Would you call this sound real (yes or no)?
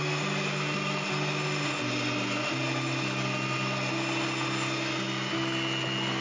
yes